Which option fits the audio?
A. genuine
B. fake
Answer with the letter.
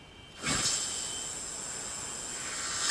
A